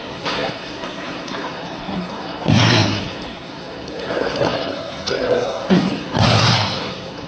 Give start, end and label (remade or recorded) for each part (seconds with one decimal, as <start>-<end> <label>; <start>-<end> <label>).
0.0-7.3 remade